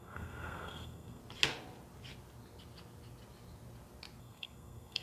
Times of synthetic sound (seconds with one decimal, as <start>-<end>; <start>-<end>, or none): 0.0-1.2; 4.2-5.0